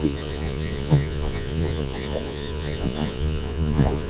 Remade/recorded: remade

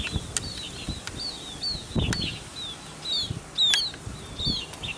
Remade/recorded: recorded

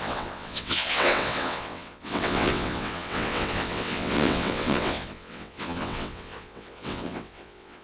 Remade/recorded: remade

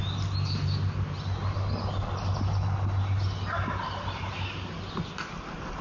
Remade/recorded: recorded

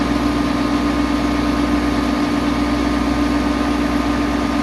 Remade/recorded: recorded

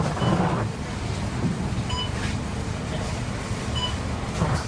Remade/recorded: recorded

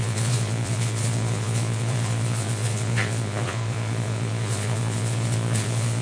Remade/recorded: remade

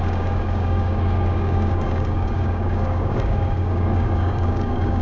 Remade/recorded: remade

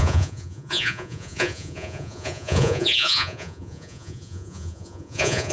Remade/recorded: remade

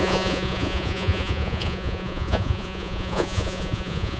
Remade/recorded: remade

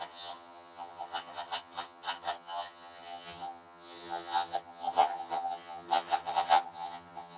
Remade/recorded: remade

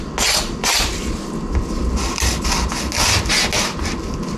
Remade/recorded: recorded